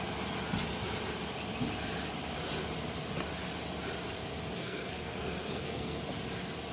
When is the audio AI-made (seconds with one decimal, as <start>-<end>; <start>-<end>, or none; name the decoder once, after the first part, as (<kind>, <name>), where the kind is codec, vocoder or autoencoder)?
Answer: 4.6-6.0 (codec, SNAC)